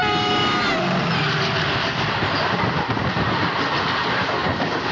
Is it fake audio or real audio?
real